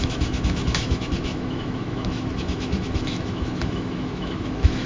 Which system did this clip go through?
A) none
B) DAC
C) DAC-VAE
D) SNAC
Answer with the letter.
C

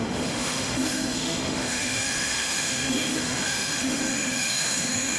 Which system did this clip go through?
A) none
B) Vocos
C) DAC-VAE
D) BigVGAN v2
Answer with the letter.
C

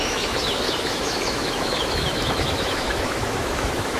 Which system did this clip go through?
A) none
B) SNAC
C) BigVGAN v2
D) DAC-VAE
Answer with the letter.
D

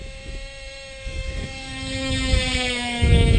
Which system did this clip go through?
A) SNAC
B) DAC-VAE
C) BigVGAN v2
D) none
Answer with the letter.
B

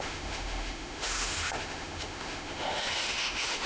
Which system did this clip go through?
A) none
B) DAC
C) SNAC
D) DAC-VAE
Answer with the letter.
D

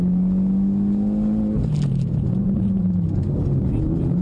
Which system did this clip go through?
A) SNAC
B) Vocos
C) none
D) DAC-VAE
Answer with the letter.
C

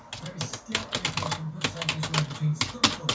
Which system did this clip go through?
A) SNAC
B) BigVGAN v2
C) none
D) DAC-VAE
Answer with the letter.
C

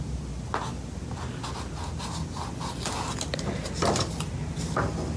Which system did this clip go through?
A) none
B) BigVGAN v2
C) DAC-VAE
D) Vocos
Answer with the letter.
A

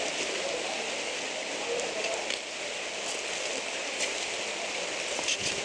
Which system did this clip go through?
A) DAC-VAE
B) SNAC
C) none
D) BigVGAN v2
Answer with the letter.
C